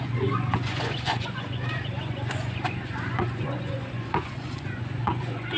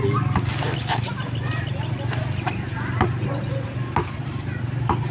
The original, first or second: second